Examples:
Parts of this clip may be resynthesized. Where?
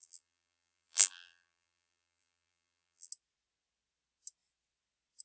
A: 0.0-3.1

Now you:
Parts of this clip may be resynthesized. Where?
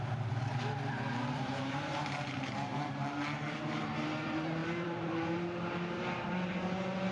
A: 0.0-7.1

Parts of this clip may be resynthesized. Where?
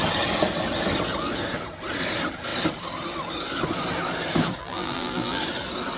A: 4.6-5.4